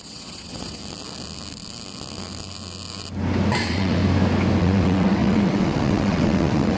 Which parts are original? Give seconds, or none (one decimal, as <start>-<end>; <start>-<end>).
0.8-3.6; 4.0-4.6